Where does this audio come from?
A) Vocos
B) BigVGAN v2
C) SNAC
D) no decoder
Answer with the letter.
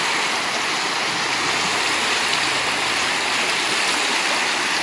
D